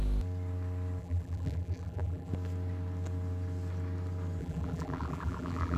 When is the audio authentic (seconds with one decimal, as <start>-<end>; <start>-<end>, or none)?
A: 0.0-1.0; 2.3-4.4